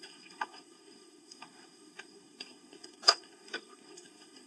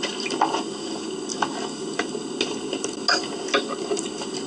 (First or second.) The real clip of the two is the second